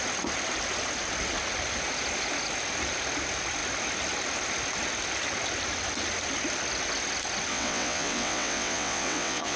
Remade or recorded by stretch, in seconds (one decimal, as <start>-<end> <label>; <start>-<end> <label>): 0.0-7.5 recorded; 7.5-9.6 remade